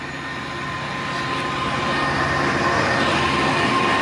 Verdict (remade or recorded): recorded